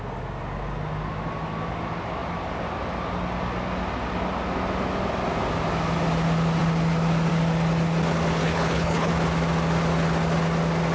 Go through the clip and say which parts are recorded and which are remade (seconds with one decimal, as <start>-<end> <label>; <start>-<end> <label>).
0.0-8.4 recorded; 8.4-9.1 remade; 9.1-10.9 recorded